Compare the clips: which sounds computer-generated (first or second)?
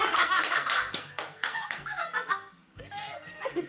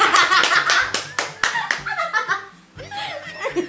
first